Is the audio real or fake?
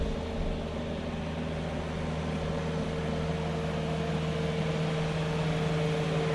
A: real